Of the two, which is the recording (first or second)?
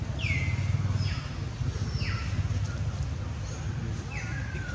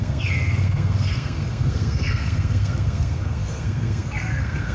first